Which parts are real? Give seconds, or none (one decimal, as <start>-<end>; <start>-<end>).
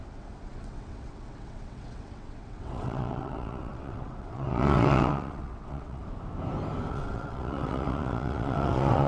6.0-6.9